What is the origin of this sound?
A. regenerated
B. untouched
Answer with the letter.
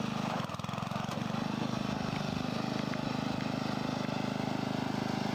B